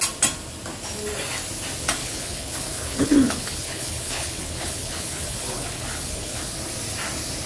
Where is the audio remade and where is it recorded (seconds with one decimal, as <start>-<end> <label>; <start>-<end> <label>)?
0.0-2.0 recorded; 2.0-6.5 remade; 6.5-7.5 recorded